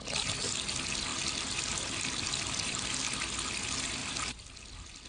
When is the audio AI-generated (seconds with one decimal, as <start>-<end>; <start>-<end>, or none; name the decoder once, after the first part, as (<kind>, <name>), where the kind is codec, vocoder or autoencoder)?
1.1-2.9 (vocoder, BigVGAN v2)